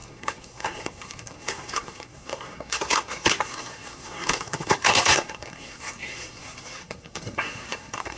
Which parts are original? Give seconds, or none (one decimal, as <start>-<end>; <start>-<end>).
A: none